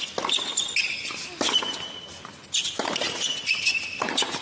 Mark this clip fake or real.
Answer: real